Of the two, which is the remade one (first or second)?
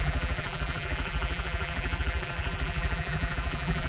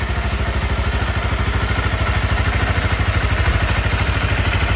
first